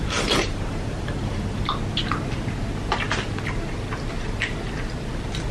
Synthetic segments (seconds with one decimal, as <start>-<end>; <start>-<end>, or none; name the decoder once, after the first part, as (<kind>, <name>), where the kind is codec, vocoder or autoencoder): 0.0-1.7 (vocoder, BigVGAN v2)